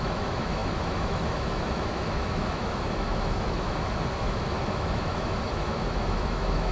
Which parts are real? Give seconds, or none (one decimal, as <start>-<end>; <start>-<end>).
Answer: none

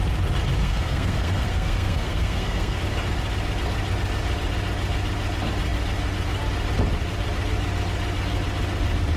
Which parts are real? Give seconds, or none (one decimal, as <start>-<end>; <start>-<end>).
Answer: 0.0-0.6; 2.8-9.2

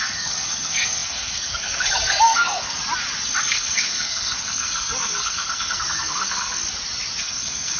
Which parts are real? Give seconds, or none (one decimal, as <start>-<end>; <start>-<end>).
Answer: 2.8-3.4; 6.6-7.2